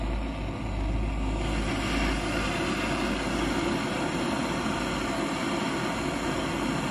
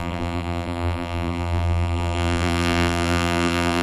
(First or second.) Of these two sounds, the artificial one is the second